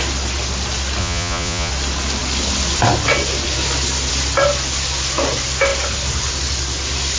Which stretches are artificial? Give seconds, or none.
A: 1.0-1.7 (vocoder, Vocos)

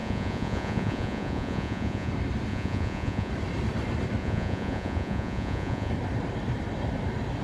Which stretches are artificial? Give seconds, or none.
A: 0.0-2.1 (vocoder, Vocos); 2.5-3.3; 4.2-5.9